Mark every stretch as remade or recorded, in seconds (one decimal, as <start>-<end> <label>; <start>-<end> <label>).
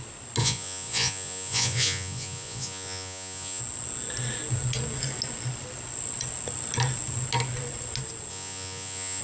0.0-0.4 recorded; 0.4-3.6 remade; 3.6-8.3 recorded; 8.3-9.2 remade